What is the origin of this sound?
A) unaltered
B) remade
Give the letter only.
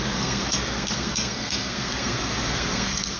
B